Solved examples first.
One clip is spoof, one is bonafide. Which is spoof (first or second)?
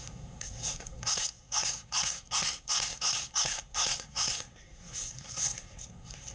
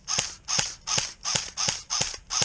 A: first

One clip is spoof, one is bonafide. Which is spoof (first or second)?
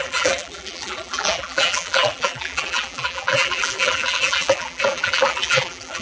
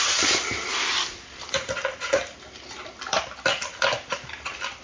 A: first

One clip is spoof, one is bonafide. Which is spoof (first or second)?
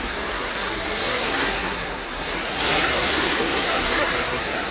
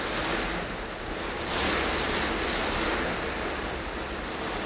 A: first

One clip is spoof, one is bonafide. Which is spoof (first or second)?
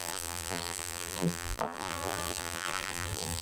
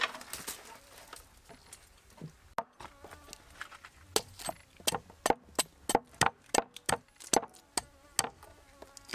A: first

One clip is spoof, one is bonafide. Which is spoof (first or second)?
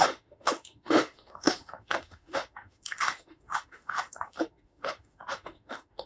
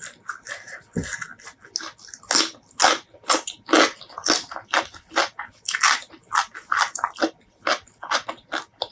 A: first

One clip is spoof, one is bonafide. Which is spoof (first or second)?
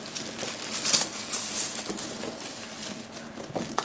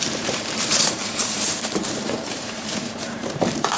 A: second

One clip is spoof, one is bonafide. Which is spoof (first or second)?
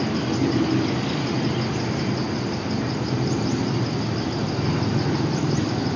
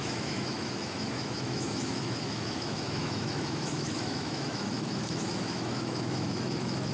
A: second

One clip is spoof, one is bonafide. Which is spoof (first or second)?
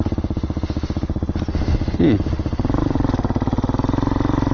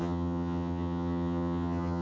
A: second